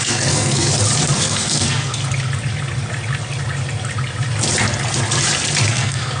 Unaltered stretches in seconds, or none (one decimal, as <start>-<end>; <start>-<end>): 0.7-1.2; 2.0-5.7